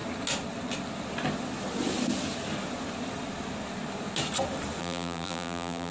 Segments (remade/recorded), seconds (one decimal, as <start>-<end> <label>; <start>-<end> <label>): 0.0-4.8 recorded; 4.8-5.9 remade